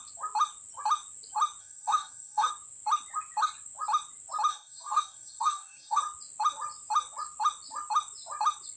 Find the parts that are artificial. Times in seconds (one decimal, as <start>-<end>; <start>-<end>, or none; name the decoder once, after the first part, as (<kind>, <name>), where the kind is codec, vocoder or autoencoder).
1.6-2.5 (codec, DAC); 4.5-6.0